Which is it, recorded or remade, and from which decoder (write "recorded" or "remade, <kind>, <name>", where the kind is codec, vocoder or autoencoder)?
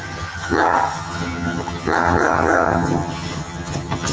remade, vocoder, HiFi-GAN